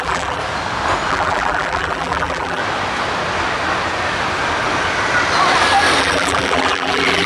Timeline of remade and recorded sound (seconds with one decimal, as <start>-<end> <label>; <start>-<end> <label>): 0.0-0.4 remade; 0.4-1.1 recorded; 1.1-2.6 remade; 2.6-6.0 recorded; 6.0-7.3 remade